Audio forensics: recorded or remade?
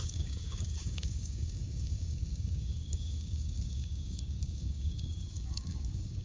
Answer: remade